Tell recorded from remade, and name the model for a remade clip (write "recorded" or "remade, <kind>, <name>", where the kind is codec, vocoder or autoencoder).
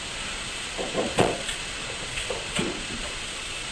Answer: remade, vocoder, Vocos